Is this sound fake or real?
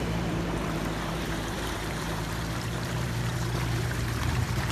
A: fake